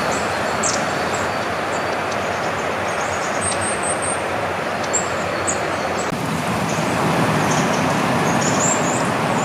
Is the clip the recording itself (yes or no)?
yes